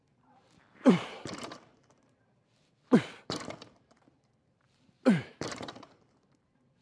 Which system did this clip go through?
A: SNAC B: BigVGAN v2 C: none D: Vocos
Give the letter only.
B